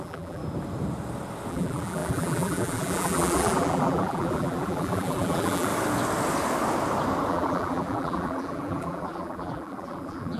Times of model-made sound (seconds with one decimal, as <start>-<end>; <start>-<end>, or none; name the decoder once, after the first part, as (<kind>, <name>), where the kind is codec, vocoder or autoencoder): 0.0-0.4 (vocoder, BigVGAN v2); 1.5-5.7; 7.3-10.4